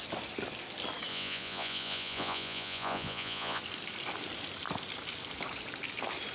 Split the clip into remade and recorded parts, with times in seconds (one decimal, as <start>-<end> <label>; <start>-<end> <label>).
0.0-1.1 recorded; 1.1-3.6 remade; 3.6-6.3 recorded